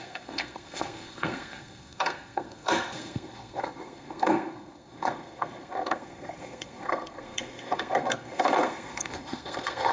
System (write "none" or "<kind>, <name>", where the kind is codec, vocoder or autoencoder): codec, SNAC